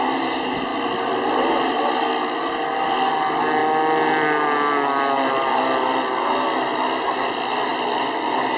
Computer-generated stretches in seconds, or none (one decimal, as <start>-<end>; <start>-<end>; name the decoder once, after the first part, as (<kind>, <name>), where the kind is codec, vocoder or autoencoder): none